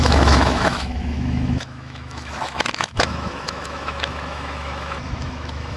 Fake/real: fake